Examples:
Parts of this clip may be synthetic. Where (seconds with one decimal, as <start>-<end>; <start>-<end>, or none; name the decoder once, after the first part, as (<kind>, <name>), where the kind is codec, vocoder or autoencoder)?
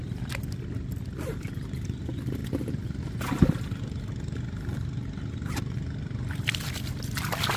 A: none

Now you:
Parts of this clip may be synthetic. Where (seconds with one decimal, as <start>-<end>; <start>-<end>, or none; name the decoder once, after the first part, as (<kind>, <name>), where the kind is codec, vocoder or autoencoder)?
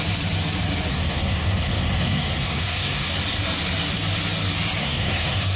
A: 0.9-3.1 (codec, SNAC); 4.8-5.6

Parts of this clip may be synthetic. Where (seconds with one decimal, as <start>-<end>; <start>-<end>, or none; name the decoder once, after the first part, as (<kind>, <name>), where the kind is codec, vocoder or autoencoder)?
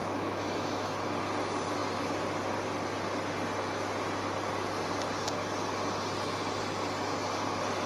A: 0.0-0.9 (autoencoder, DAC-VAE)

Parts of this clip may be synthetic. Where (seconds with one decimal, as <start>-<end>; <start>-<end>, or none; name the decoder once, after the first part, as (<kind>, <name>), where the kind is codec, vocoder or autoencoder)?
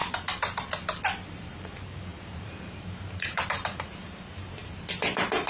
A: 1.4-4.6 (vocoder, BigVGAN v2)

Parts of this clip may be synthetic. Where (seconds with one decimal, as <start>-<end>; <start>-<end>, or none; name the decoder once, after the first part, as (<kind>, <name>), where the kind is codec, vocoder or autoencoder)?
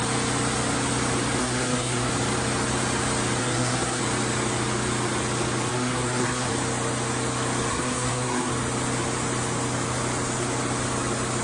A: 1.4-2.1 (codec, SNAC); 3.4-4.0; 5.7-6.5; 7.7-8.5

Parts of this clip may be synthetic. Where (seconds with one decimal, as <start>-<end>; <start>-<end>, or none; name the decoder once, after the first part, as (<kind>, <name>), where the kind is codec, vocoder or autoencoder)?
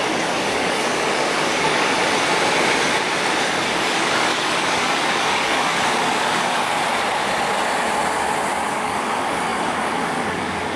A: 0.0-2.0 (codec, DAC); 3.4-6.7; 8.7-10.8